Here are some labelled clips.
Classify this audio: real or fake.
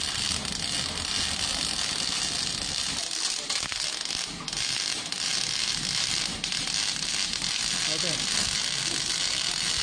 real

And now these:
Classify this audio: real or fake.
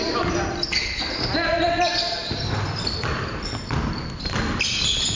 real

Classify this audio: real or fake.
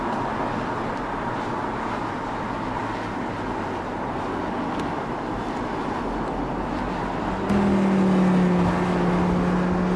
real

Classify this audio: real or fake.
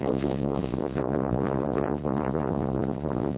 fake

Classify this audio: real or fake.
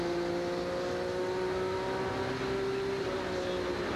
real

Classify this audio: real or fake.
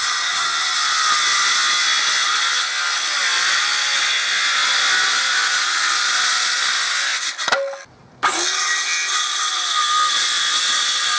real